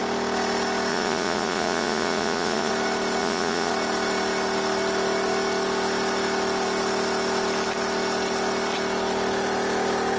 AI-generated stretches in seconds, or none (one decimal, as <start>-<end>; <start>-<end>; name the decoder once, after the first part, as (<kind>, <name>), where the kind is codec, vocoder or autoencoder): 0.9-2.7 (vocoder, Vocos); 3.2-3.7